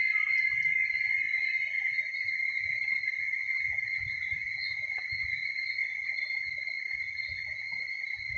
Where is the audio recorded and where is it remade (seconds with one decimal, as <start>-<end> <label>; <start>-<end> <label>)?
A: 0.0-1.5 recorded; 1.5-2.0 remade; 2.0-3.4 recorded; 3.4-5.0 remade; 5.0-8.4 recorded

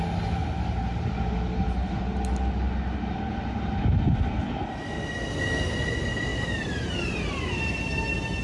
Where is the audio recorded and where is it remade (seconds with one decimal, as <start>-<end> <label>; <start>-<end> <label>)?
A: 0.0-6.3 recorded; 6.3-6.9 remade; 6.9-8.4 recorded